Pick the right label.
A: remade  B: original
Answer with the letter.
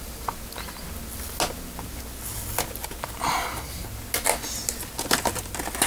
B